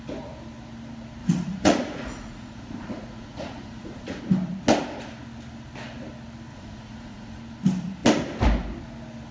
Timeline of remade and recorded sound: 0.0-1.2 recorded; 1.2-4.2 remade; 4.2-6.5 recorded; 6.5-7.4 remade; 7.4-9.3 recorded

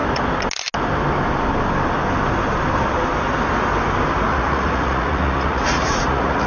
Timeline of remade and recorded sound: 0.0-4.3 recorded; 4.3-6.5 remade

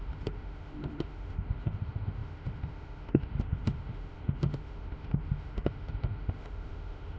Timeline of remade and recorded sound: 0.0-7.2 remade

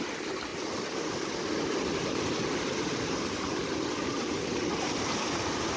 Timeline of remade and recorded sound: 0.0-0.5 recorded; 0.5-1.3 remade; 1.3-2.0 recorded; 2.0-5.8 remade